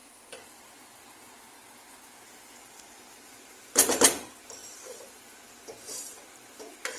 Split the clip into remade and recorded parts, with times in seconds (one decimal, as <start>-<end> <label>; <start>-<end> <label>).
0.0-0.6 remade; 0.6-4.6 recorded; 4.6-5.2 remade; 5.2-7.0 recorded